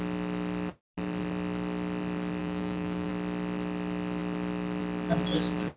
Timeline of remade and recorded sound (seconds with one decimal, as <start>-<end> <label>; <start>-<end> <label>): 0.0-2.4 recorded; 2.4-3.1 remade; 3.1-5.8 recorded